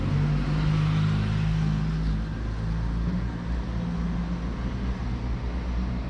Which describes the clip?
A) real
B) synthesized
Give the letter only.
A